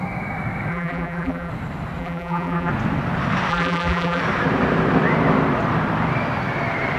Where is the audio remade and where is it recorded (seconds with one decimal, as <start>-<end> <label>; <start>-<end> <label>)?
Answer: 0.0-0.7 recorded; 0.7-1.5 remade; 1.5-2.0 recorded; 2.0-2.7 remade; 2.7-3.5 recorded; 3.5-4.2 remade; 4.2-7.0 recorded